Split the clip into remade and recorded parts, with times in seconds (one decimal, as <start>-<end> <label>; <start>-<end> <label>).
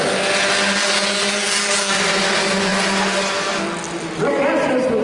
0.0-5.0 recorded